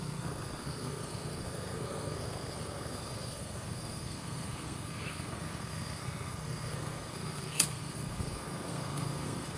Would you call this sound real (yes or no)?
no